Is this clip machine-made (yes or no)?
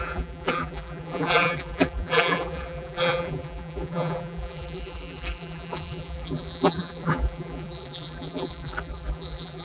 yes